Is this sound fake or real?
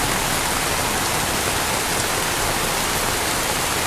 real